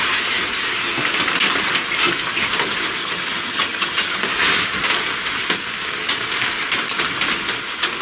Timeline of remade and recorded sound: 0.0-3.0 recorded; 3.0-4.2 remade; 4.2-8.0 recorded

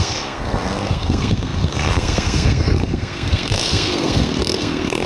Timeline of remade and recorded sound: 0.0-5.1 remade

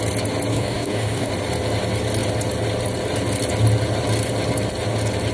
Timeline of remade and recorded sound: 0.0-0.5 recorded; 0.5-1.3 remade; 1.3-5.3 recorded

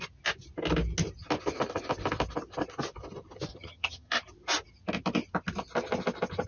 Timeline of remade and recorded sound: 0.0-3.5 recorded; 3.5-4.1 remade; 4.1-6.5 recorded